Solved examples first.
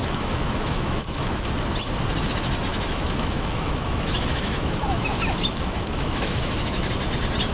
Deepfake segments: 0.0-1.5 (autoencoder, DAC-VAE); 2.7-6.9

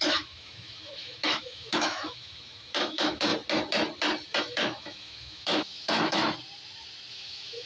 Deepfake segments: 0.0-3.3 (autoencoder, DAC-VAE); 4.4-6.2; 7.1-7.7

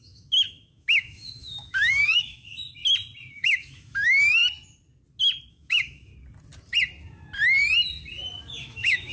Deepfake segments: 0.0-2.8 (autoencoder, DAC-VAE); 3.3-4.4; 5.5-6.1; 8.5-9.1

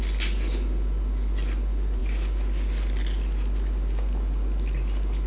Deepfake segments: none